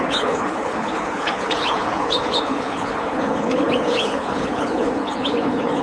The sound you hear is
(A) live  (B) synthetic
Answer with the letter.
B